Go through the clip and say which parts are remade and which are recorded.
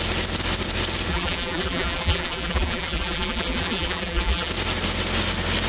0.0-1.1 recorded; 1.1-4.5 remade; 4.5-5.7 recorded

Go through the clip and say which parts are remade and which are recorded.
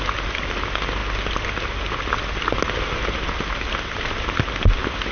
0.0-5.1 recorded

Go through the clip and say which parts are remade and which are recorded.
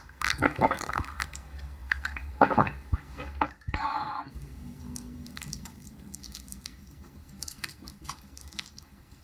0.0-9.2 remade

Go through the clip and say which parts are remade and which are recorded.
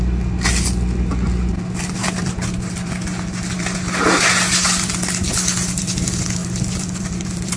0.0-7.6 recorded